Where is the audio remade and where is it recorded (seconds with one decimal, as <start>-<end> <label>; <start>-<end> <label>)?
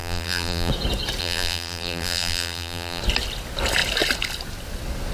0.0-0.7 remade; 0.7-1.2 recorded; 1.2-3.0 remade; 3.0-5.1 recorded